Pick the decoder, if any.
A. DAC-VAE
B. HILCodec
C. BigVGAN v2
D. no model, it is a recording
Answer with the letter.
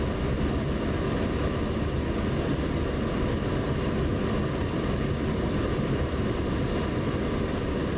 C